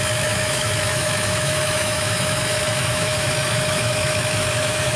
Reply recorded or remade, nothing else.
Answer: remade